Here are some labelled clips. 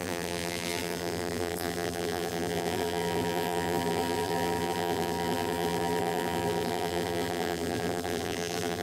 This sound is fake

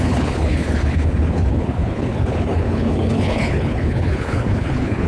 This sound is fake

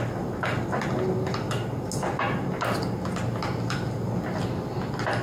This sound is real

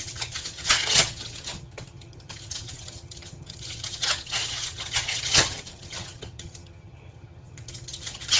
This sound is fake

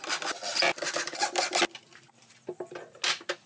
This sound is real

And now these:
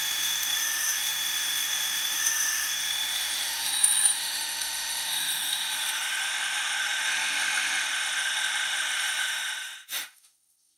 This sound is fake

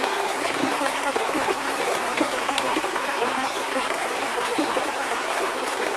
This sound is fake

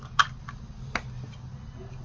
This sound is real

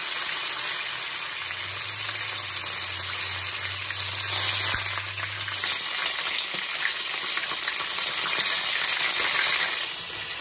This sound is real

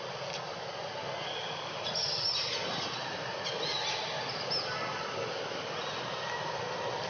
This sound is real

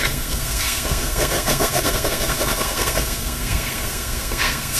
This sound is fake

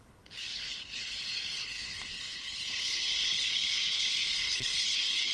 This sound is fake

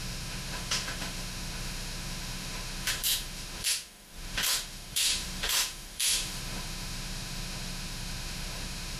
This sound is fake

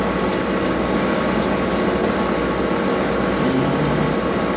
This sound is real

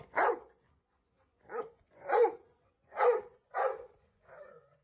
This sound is fake